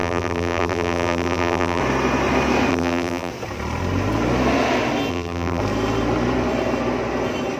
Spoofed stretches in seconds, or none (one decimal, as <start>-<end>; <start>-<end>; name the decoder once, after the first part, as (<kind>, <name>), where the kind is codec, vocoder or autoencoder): 0.0-1.8 (vocoder, BigVGAN v2); 2.7-3.3; 5.1-5.6